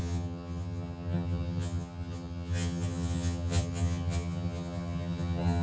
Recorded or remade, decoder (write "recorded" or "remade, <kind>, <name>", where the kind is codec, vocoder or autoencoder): remade, vocoder, HiFi-GAN